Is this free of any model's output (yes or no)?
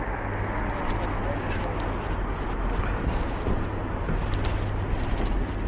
yes